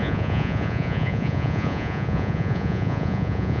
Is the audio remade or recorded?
remade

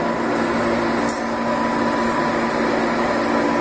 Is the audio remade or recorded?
recorded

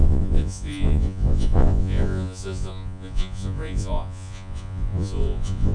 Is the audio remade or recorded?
remade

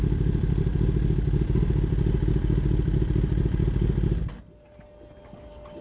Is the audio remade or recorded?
recorded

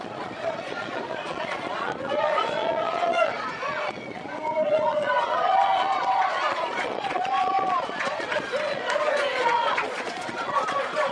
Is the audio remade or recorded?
remade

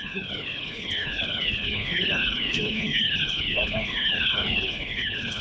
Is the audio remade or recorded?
remade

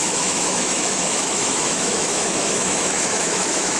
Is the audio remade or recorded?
remade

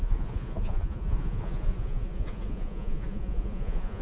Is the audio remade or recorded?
remade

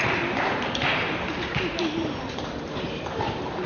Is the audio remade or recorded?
remade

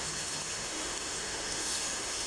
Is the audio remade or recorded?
remade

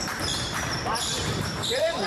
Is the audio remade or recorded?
remade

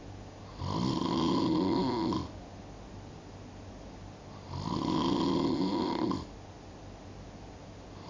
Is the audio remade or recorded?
recorded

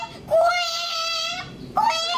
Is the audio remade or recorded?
remade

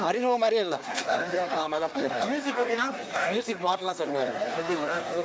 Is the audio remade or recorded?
remade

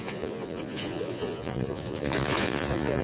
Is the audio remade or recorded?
remade